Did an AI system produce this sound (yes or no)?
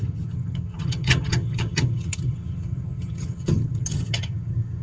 yes